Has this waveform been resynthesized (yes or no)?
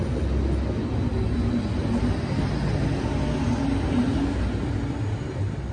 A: no